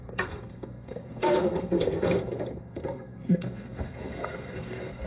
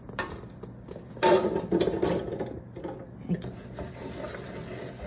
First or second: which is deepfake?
first